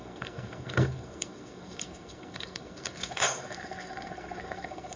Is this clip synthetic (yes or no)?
yes